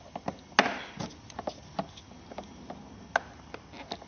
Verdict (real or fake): real